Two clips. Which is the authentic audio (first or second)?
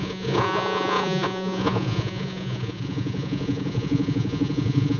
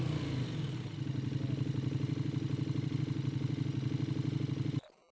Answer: second